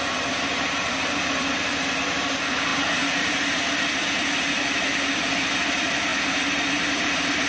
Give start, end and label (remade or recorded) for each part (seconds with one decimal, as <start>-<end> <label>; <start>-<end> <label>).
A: 0.0-7.5 remade